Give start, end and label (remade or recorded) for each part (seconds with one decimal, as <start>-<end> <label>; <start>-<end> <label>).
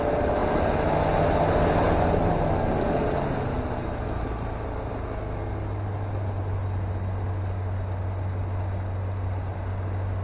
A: 0.0-10.2 recorded